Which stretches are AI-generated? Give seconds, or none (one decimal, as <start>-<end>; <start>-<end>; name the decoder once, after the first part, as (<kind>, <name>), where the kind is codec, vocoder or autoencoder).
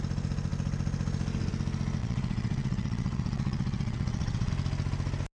2.0-4.5 (vocoder, WaveNeXt)